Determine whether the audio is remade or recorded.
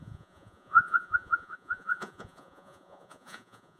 remade